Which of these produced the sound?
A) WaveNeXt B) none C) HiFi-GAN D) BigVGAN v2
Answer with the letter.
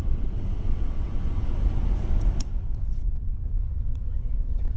A